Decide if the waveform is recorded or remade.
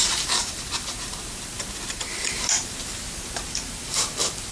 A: remade